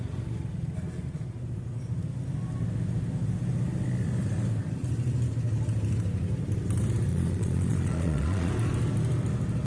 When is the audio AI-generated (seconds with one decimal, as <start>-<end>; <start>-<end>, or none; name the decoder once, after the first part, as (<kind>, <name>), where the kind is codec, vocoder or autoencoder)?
7.1-8.5 (vocoder, Vocos)